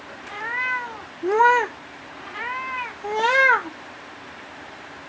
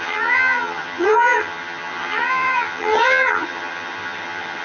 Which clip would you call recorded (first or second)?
first